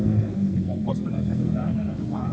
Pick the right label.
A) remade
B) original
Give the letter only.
A